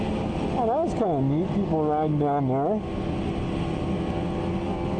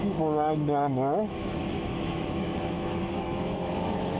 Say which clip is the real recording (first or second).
first